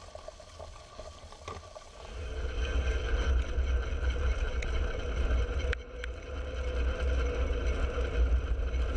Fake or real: real